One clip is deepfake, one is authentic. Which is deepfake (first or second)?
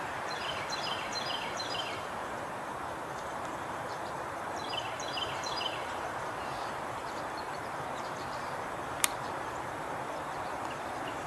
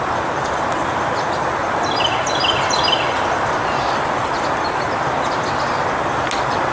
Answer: first